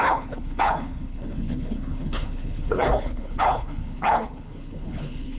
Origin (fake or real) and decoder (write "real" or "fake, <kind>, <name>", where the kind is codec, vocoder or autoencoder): fake, codec, HILCodec